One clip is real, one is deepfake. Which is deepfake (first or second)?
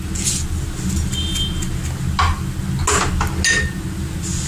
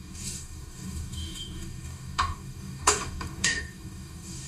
second